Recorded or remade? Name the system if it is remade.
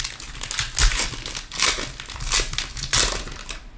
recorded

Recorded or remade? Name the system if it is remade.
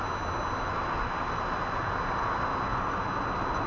recorded